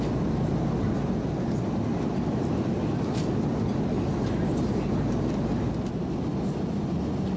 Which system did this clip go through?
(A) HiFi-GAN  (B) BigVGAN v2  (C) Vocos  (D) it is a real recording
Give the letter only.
D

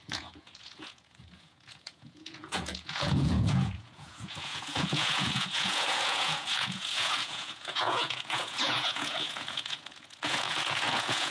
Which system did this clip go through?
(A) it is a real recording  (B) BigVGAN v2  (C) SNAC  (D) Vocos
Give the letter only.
D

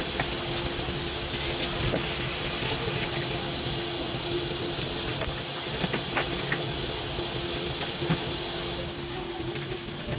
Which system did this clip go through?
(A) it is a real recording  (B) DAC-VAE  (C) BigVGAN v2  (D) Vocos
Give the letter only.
A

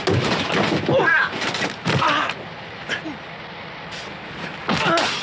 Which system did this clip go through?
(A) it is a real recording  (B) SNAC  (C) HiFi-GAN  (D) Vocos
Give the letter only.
A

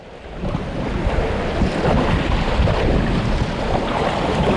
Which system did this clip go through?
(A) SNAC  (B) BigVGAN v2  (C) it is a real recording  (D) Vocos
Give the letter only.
C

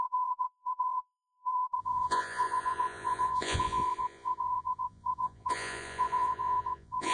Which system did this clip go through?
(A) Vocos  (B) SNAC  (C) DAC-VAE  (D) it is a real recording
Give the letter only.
A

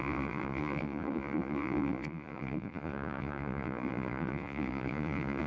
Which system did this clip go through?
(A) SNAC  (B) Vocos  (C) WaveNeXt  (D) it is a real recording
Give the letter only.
B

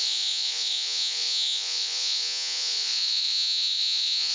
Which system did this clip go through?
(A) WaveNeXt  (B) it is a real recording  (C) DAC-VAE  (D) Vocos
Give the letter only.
D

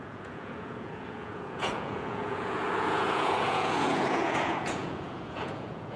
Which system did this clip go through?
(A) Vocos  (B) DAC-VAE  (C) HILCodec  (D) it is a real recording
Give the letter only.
A